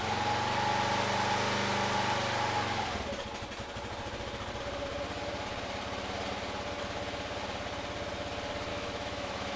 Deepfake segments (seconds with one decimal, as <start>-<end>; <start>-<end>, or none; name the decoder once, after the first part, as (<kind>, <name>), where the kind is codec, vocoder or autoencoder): 8.7-9.6 (autoencoder, DAC-VAE)